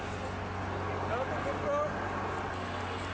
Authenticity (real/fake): real